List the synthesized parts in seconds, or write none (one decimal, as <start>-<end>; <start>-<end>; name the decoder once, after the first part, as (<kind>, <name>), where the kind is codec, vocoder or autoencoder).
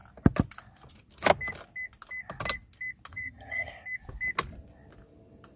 3.1-3.7 (vocoder, HiFi-GAN)